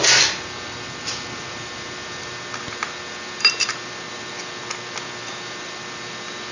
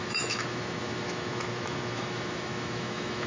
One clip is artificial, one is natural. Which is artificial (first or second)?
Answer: second